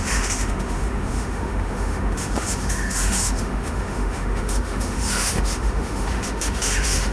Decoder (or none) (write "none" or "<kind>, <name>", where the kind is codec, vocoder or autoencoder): autoencoder, DAC-VAE